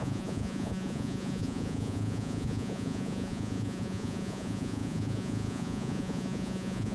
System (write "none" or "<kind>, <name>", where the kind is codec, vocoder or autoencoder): vocoder, Vocos